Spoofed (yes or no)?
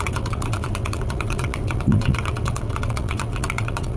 yes